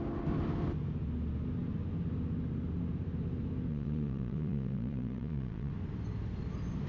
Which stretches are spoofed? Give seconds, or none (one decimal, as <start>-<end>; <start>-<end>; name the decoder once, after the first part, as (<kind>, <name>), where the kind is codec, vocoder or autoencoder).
3.7-5.7 (vocoder, Vocos)

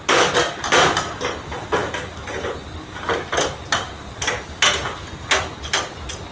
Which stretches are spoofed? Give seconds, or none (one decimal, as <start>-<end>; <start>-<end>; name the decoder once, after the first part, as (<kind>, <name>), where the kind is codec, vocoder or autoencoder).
none

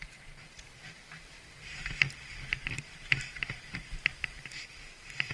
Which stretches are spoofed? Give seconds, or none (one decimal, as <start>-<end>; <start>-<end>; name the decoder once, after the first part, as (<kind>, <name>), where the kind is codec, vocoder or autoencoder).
0.0-0.6 (vocoder, Vocos)

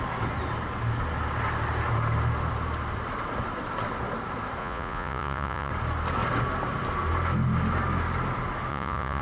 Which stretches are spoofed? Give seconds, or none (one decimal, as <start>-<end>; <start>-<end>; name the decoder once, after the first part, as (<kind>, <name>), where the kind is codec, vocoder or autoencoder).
4.6-5.7 (vocoder, Vocos); 8.7-9.2

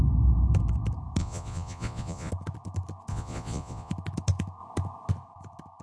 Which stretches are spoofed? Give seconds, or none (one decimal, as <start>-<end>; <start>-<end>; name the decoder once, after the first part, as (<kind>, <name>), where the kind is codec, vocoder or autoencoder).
1.2-2.3 (vocoder, Vocos); 3.1-3.9

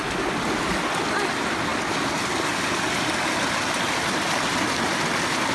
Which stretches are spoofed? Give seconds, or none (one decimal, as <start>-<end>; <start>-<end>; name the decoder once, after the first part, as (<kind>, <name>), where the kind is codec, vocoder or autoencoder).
none